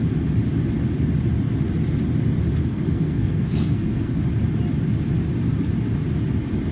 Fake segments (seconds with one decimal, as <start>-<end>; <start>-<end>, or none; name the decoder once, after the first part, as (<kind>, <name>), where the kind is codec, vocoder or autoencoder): 2.6-4.2 (codec, SNAC)